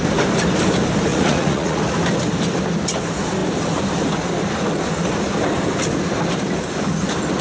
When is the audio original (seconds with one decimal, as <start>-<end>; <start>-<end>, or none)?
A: 0.0-1.1; 1.8-7.4